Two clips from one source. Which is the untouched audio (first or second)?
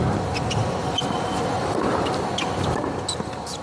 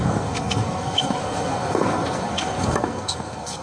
first